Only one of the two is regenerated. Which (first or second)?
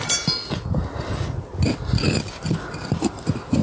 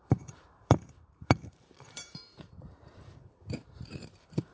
second